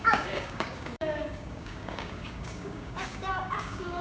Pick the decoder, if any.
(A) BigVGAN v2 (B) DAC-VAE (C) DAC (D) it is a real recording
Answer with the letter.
C